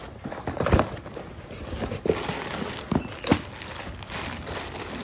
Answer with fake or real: real